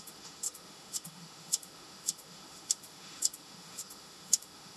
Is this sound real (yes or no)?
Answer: no